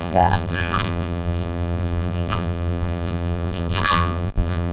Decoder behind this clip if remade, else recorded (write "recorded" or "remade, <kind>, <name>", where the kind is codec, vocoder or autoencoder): remade, vocoder, BigVGAN v2